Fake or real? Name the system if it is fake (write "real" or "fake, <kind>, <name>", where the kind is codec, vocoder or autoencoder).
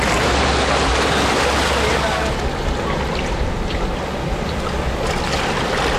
real